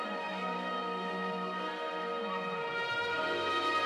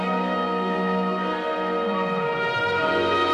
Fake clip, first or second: first